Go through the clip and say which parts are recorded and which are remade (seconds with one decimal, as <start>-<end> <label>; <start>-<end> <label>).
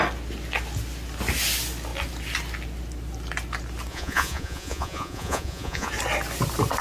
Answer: 0.0-3.9 recorded; 3.9-5.9 remade; 5.9-6.8 recorded